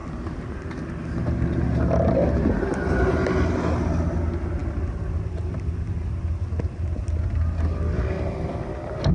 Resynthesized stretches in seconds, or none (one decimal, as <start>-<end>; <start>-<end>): none